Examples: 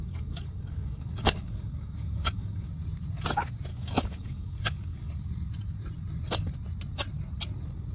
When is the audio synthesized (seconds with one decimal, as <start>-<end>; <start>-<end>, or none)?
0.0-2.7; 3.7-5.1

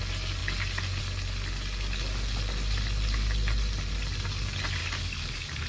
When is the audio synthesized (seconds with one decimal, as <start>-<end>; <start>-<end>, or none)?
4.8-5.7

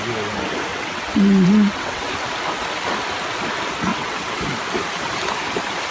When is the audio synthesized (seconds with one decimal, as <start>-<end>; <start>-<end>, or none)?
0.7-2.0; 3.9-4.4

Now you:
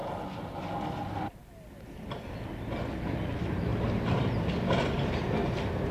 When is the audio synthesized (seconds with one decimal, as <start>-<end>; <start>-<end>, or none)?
3.7-4.3

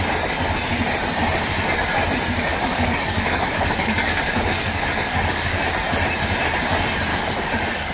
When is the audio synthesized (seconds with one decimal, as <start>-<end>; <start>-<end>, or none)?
2.5-5.6; 7.1-7.9